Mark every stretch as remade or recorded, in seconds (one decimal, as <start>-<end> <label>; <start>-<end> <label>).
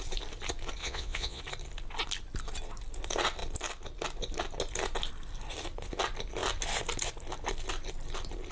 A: 0.0-0.8 recorded; 0.8-1.4 remade; 1.4-8.5 recorded